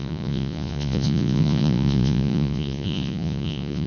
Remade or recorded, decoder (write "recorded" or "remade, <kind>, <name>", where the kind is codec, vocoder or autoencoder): remade, vocoder, Vocos